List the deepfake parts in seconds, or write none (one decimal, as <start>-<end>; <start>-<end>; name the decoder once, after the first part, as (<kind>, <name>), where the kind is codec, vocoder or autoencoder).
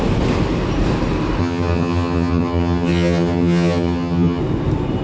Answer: 1.4-4.4 (vocoder, HiFi-GAN)